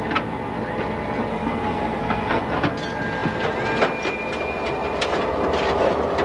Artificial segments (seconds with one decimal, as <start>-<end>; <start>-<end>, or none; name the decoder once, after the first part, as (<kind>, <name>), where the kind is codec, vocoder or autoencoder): 1.3-2.4 (codec, SNAC)